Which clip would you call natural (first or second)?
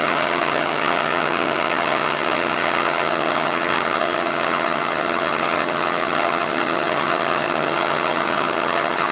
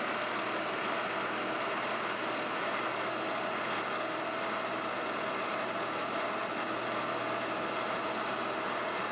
second